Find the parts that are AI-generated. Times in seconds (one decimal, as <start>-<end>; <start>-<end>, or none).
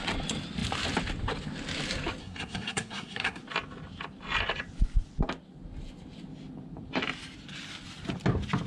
2.2-3.4